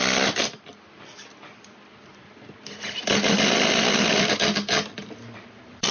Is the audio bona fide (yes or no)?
no